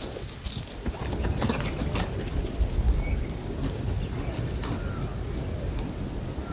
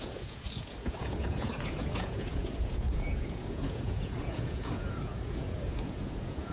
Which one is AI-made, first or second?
second